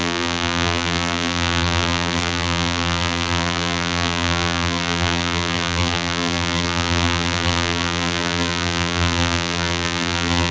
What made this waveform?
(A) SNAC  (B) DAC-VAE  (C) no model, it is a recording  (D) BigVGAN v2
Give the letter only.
D